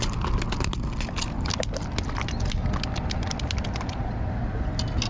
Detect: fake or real real